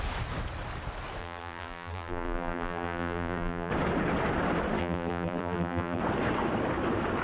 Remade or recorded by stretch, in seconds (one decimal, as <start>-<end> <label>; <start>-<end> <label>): 0.0-1.2 recorded; 1.2-3.7 remade; 3.7-4.8 recorded; 4.8-6.0 remade; 6.0-7.2 recorded